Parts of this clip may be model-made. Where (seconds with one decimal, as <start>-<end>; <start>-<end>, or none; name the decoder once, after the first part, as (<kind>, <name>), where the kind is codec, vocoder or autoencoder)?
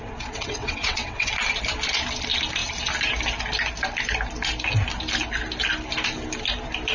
0.0-1.3 (vocoder, WaveNeXt)